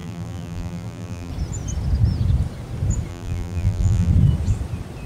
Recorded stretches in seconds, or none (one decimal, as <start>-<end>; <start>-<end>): 1.3-3.1; 4.1-5.1